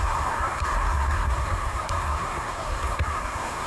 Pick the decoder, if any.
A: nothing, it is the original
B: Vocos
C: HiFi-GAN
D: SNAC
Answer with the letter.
D